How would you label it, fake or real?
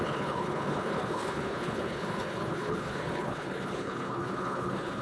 fake